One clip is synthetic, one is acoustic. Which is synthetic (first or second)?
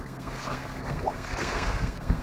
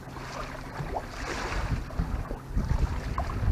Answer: first